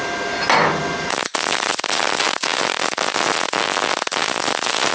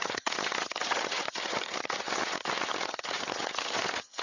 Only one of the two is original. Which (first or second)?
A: first